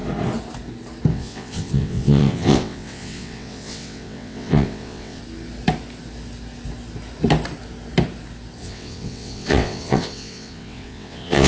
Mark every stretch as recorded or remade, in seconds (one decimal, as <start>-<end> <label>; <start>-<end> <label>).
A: 0.0-1.1 recorded; 1.1-5.2 remade; 5.2-8.6 recorded; 8.6-11.5 remade